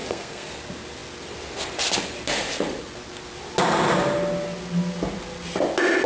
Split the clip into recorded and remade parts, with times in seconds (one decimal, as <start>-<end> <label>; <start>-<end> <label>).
0.0-0.5 remade; 0.5-6.1 recorded